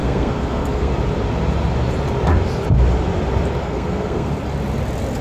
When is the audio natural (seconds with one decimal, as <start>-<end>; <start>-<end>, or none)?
0.9-3.6; 4.3-5.2